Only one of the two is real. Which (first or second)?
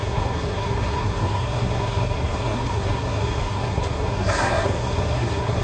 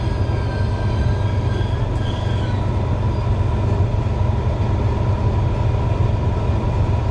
second